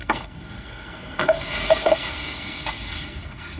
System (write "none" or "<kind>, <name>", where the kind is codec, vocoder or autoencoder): codec, SNAC